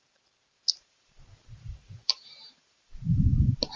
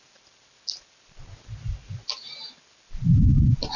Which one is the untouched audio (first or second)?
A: second